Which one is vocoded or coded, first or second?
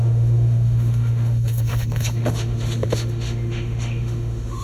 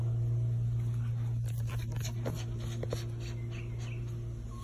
first